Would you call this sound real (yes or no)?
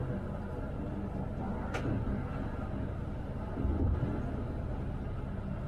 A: yes